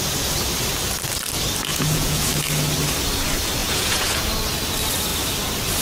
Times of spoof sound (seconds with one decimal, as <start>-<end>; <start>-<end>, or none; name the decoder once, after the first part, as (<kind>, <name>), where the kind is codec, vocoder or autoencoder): 1.7-2.3 (vocoder, Vocos); 3.6-4.3